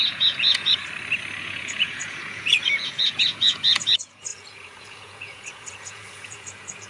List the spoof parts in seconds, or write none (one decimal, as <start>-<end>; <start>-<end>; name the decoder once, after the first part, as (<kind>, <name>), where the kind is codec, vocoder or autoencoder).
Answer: 0.0-0.8 (vocoder, Vocos); 1.4-6.9